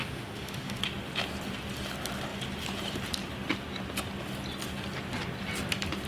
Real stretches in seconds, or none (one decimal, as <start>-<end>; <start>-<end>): 0.8-6.1